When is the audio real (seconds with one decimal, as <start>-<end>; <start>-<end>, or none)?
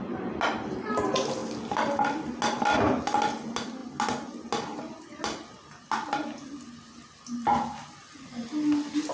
0.0-1.4; 2.4-9.1